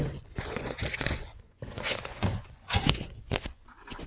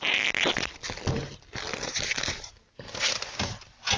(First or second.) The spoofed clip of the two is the first